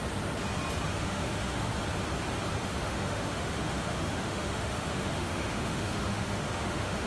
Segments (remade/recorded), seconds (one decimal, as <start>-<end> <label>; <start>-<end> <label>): 0.0-0.9 recorded; 0.9-1.7 remade; 1.7-2.6 recorded; 2.6-7.1 remade